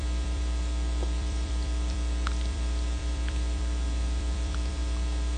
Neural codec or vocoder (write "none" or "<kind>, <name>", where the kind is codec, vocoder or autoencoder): vocoder, BigVGAN v2